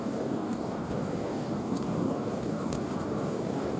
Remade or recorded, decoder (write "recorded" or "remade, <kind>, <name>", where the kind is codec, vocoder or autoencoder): remade, codec, DAC